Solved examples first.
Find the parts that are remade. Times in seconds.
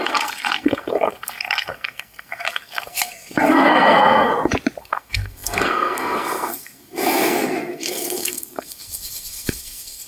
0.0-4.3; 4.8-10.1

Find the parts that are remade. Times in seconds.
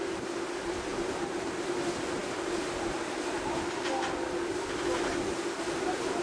0.9-1.5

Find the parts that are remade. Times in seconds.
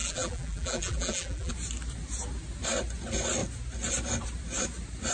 0.0-1.5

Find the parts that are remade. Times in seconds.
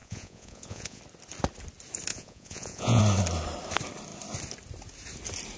0.0-1.0; 2.1-3.0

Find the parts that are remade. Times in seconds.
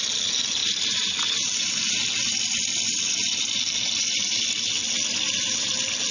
0.6-1.8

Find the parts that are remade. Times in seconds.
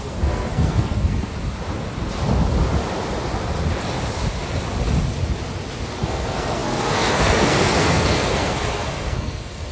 0.0-1.3; 6.0-9.7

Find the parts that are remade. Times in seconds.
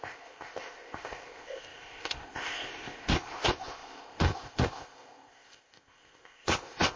0.0-7.0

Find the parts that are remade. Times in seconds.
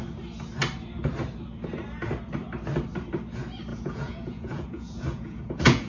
3.7-5.9